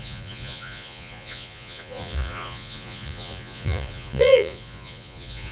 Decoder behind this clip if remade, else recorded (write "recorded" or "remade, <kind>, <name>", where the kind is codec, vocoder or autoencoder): remade, vocoder, Vocos